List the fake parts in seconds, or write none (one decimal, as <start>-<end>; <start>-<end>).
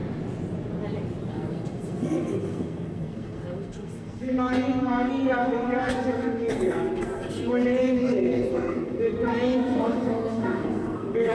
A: 1.3-11.3